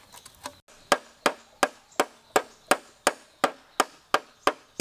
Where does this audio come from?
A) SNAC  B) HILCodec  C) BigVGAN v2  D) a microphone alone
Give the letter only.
D